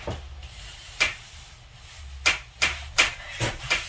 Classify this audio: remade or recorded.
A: recorded